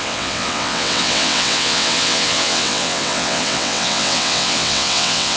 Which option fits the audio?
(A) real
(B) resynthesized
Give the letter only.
B